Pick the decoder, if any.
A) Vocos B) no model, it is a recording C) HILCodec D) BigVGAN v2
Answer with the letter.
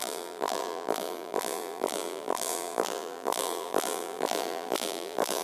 D